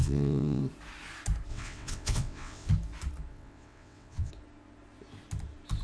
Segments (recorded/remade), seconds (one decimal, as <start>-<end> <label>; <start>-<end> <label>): 0.0-0.6 remade; 0.6-1.5 recorded; 1.5-2.7 remade; 2.7-3.3 recorded; 3.3-4.3 remade; 4.3-5.8 recorded